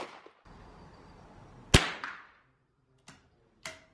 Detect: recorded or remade recorded